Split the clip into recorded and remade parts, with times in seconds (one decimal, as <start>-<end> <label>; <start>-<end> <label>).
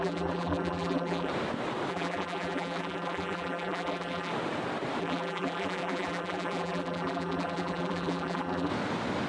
0.0-1.3 remade; 1.3-1.9 recorded; 1.9-4.3 remade; 4.3-5.0 recorded; 5.0-8.7 remade; 8.7-9.3 recorded